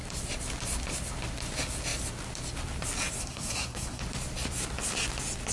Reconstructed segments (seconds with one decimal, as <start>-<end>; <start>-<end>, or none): 3.2-4.0